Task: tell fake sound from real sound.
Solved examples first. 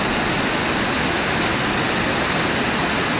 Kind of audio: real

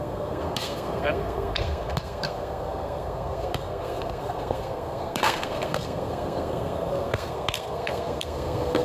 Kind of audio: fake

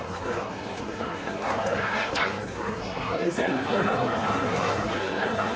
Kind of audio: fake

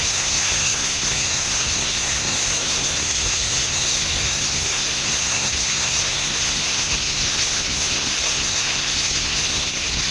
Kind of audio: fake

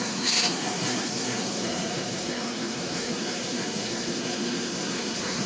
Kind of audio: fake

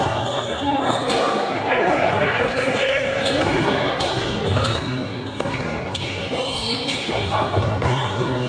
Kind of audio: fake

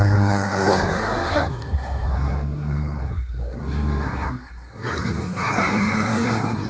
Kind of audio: fake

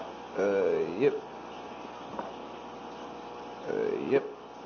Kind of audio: real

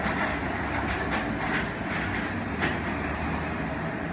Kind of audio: real